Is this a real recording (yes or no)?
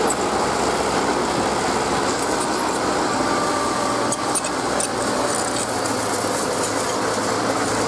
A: yes